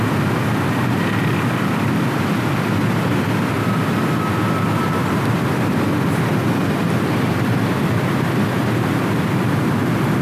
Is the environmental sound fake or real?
real